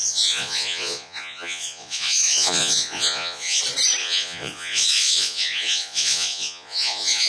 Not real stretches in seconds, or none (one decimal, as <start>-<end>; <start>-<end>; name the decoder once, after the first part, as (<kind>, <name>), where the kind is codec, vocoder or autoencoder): 0.0-3.6 (vocoder, Vocos); 4.0-7.3